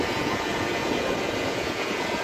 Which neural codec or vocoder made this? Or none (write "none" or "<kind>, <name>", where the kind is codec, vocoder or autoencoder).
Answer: vocoder, Vocos